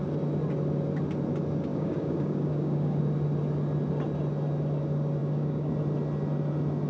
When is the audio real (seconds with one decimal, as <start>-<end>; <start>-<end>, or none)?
0.0-1.7; 3.0-5.2; 5.7-6.9